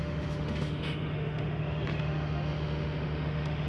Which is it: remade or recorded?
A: remade